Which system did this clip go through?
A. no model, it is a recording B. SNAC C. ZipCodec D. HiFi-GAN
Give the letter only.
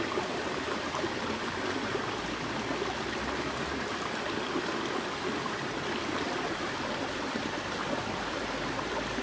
A